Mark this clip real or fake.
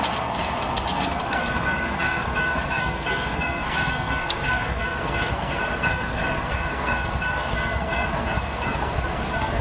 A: fake